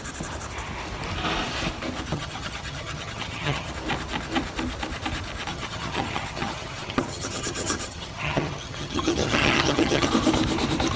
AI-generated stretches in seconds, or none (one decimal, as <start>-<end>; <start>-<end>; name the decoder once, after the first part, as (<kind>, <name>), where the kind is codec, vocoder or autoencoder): 2.1-3.7 (vocoder, HiFi-GAN); 5.5-10.1